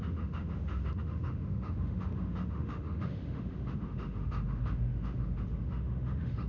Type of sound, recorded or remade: remade